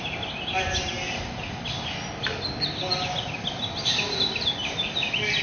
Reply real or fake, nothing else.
real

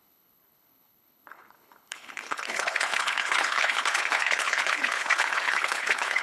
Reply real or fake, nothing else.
fake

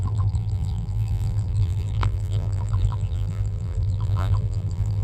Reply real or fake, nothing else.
fake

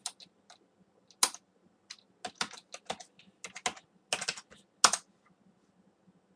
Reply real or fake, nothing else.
real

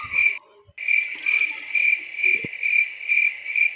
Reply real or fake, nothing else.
real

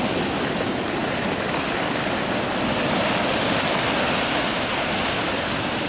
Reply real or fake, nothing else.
real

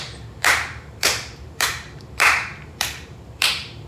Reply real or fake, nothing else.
fake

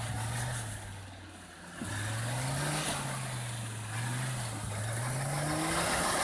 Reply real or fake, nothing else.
real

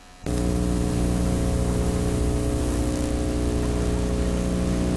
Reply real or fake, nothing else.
real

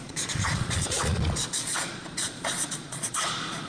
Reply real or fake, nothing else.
fake